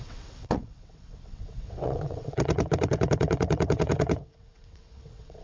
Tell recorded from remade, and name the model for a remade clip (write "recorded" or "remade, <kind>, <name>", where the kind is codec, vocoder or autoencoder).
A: remade, vocoder, WaveNeXt